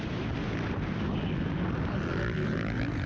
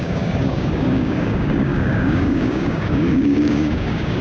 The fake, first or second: second